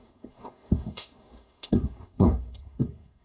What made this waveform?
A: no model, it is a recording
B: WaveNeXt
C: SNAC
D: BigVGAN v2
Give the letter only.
C